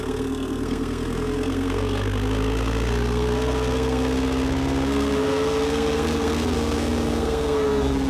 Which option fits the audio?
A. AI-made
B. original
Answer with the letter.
A